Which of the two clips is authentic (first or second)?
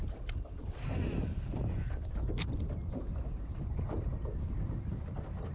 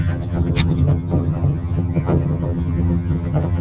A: first